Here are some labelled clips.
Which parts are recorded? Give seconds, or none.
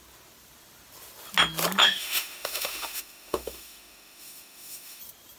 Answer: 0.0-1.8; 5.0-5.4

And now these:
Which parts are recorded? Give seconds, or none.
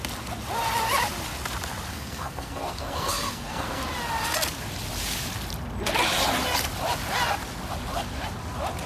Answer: 0.0-1.9; 3.8-8.9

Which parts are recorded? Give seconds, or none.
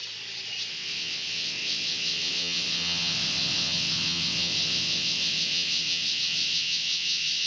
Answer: 0.0-0.7